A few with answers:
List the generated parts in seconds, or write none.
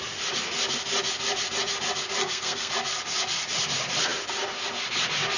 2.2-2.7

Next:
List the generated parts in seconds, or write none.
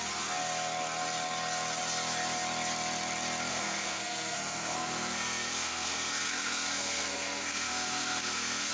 3.5-8.7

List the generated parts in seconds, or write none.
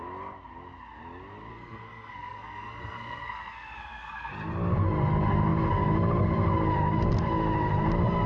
1.5-4.3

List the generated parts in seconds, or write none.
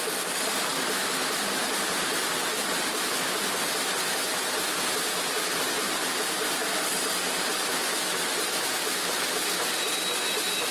none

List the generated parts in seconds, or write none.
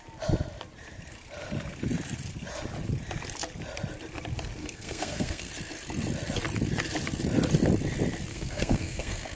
4.6-5.5; 8.3-9.4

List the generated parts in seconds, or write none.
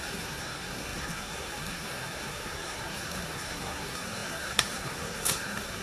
0.0-5.8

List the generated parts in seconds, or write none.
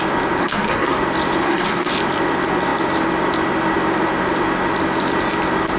0.4-1.0; 1.4-1.9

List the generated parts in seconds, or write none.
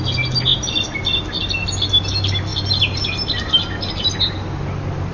none